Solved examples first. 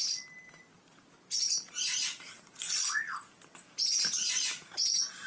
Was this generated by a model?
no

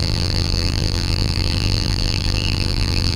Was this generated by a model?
yes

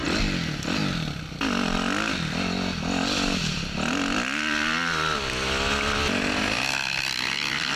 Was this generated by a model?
no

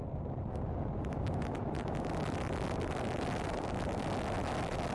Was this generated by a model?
no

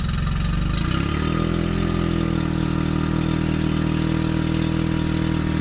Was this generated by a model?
no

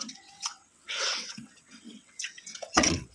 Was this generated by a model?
yes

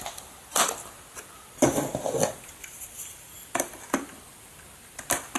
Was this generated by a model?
no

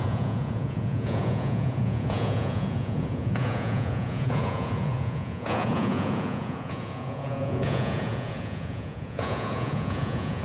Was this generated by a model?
yes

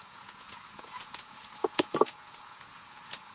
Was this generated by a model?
yes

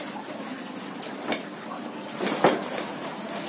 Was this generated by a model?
no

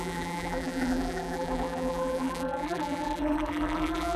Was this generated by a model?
yes